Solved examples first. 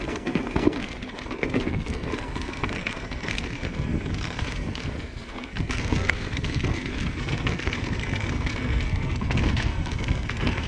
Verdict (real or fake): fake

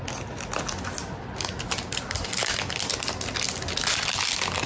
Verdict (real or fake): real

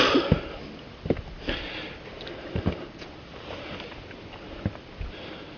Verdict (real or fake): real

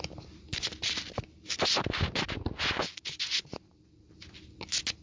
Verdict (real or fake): real